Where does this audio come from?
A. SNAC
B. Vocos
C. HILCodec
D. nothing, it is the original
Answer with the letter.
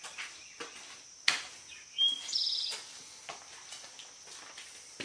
D